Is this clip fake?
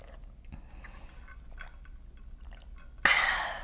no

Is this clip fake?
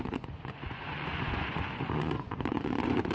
yes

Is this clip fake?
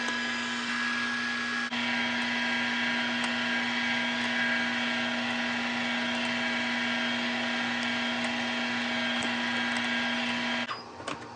no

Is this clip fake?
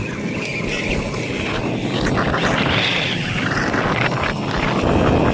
no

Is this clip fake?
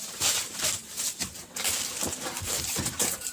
yes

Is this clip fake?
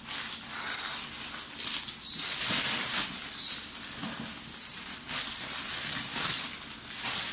no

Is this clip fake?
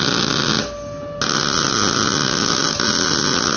no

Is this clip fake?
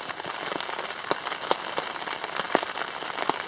no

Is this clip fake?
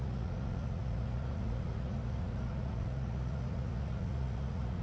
yes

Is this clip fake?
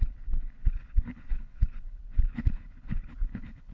yes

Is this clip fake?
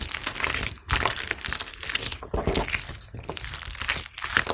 no